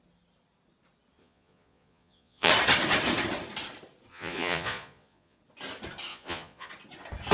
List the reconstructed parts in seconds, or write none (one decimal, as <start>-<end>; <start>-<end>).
1.2-2.5; 4.1-5.4; 6.1-6.7